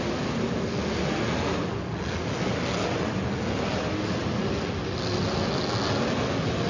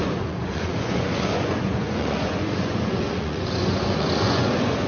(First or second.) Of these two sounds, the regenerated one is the second